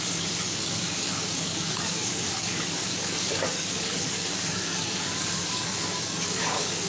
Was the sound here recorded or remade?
remade